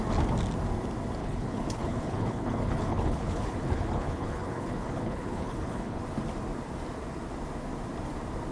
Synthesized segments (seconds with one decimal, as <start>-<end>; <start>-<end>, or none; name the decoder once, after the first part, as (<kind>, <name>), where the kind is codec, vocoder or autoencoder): 1.2-6.0 (codec, HILCodec)